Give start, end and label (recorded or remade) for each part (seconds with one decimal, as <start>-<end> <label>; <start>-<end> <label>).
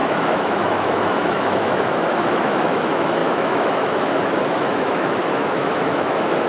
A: 0.0-6.5 remade